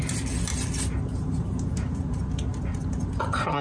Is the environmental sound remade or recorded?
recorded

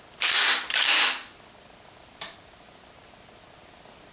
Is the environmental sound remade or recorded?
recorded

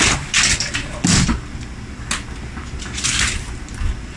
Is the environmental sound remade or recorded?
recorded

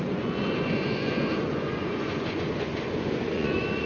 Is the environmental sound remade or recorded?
remade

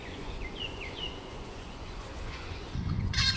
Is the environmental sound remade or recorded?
remade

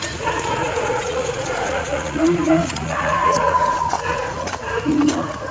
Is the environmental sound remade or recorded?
remade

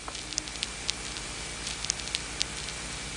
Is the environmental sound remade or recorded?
recorded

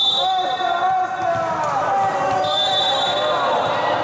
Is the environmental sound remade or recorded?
recorded